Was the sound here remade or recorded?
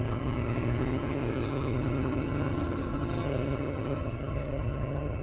remade